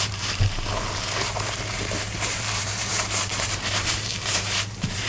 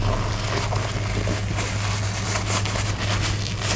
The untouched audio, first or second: second